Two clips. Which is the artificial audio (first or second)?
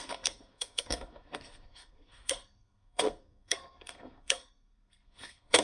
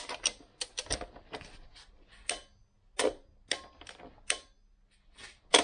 first